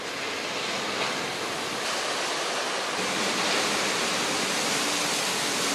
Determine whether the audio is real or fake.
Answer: real